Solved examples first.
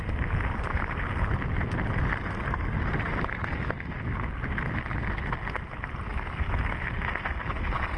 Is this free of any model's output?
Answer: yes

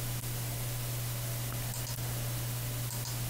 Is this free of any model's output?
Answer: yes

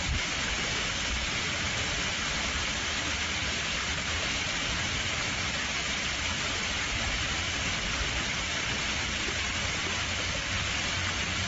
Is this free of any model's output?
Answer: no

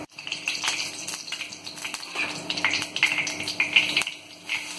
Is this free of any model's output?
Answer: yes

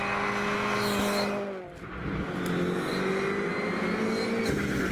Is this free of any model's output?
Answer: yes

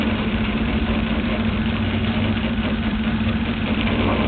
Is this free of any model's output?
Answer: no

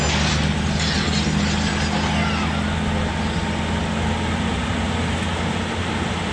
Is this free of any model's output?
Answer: yes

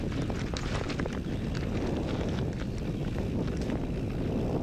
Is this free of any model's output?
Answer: yes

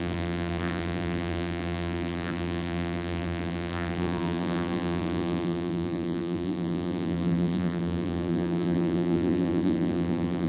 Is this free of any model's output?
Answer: no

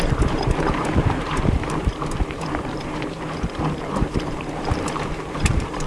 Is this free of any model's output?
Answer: no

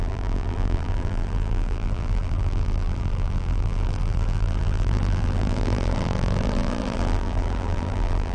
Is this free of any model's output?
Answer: no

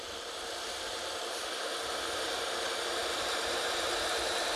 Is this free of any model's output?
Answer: no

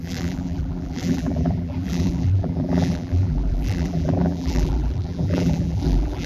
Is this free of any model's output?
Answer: no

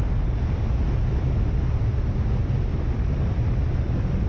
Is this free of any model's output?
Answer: yes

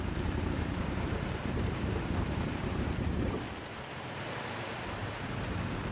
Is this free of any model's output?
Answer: no